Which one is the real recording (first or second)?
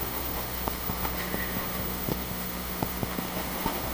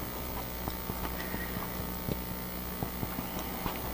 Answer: second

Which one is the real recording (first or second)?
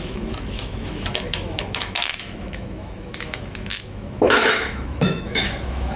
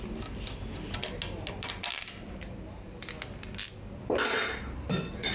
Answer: second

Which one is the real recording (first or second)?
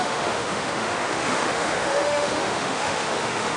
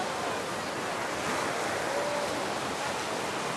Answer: second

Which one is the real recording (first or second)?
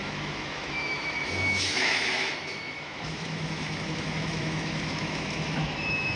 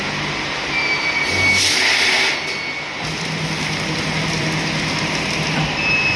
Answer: second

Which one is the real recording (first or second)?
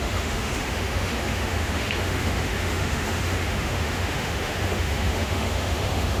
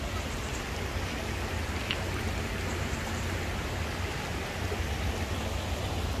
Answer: second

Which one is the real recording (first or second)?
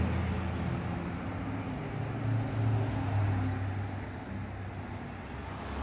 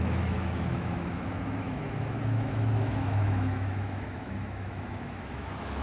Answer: first